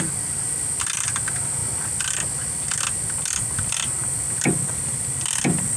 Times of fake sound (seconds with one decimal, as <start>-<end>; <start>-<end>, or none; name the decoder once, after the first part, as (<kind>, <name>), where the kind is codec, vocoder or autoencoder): none